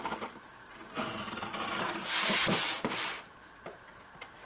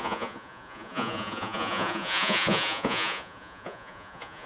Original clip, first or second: first